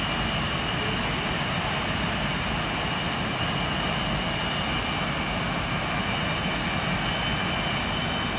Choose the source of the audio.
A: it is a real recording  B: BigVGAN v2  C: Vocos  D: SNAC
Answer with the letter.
A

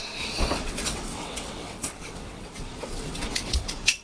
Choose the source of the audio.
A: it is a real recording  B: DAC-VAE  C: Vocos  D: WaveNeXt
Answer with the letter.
D